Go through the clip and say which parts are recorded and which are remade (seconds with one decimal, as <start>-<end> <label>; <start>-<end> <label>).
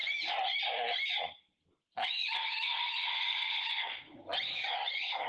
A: 0.0-0.6 remade; 0.6-1.8 recorded; 1.8-5.3 remade